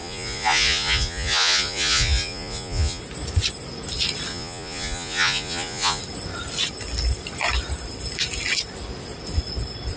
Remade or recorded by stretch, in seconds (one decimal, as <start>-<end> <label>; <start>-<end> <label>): 0.0-3.0 remade; 3.0-4.3 recorded; 4.3-6.0 remade; 6.0-10.0 recorded